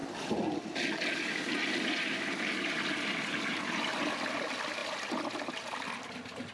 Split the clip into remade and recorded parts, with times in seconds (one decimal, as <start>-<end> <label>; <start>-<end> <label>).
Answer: 0.0-6.5 recorded